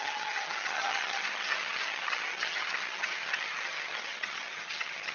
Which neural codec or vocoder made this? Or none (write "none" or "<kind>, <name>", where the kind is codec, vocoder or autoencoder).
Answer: vocoder, HiFi-GAN